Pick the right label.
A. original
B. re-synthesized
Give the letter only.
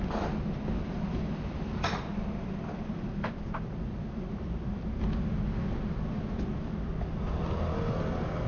A